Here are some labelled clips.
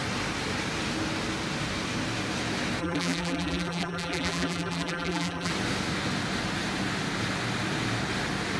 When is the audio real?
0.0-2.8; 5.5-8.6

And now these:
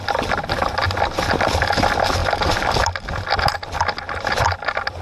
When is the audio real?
0.0-5.0

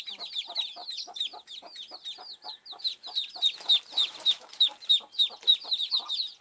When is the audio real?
0.0-6.4

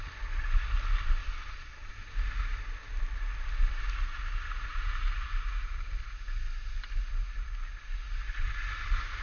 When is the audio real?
0.0-1.2; 1.9-9.2

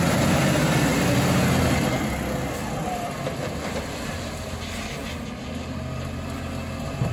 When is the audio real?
0.0-7.1

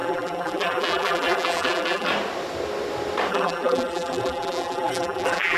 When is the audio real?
2.1-3.3